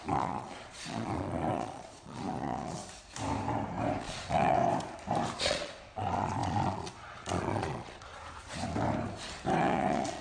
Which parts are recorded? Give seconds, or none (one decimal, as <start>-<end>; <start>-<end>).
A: 2.8-4.0; 4.6-5.4; 8.1-9.6